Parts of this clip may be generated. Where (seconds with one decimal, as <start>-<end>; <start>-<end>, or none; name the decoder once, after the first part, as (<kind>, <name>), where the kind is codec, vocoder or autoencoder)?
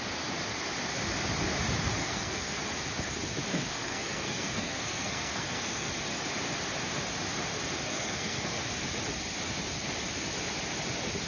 2.0-2.6 (codec, SNAC); 3.5-5.9; 7.9-8.6